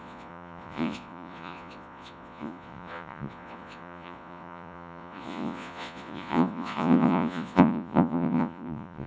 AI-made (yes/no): yes